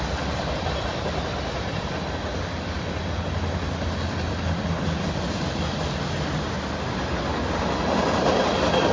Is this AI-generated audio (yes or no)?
no